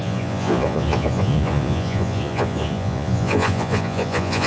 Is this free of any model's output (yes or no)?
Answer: no